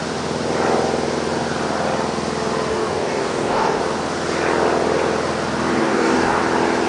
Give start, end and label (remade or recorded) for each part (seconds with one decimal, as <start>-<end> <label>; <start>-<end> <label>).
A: 0.0-2.7 recorded; 2.7-3.8 remade; 3.8-5.8 recorded; 5.8-6.4 remade; 6.4-6.9 recorded